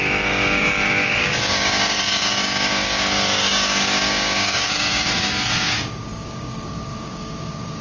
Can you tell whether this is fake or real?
fake